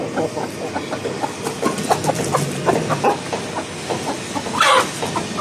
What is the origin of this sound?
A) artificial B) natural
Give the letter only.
B